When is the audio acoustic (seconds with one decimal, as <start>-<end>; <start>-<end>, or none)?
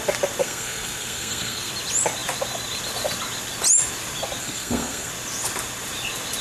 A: 0.0-0.4; 1.7-4.4; 5.1-6.4